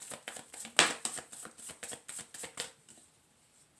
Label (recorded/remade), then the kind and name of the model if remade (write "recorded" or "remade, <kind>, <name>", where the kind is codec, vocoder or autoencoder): recorded